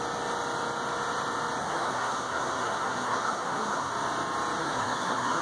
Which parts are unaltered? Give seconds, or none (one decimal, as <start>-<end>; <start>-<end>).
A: 0.0-1.6; 3.9-4.6